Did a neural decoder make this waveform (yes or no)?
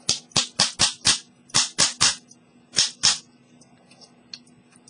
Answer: no